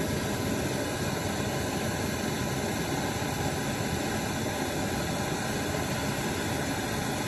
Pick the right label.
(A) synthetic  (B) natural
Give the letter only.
B